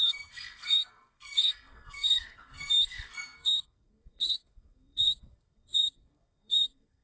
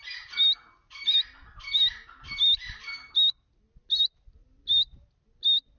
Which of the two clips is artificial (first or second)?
first